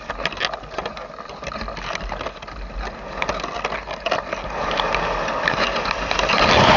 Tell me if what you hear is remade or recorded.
recorded